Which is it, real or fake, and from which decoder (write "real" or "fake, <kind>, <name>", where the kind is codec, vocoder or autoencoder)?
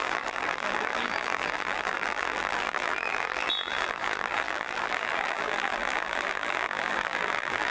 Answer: fake, vocoder, BigVGAN v2